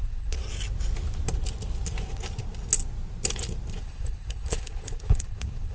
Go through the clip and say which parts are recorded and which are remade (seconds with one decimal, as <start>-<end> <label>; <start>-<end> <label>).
0.0-0.4 remade; 0.4-3.8 recorded; 3.8-5.7 remade